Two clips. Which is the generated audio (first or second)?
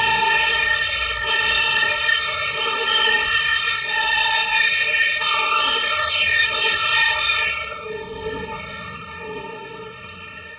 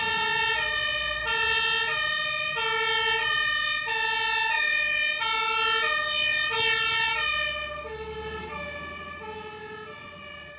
first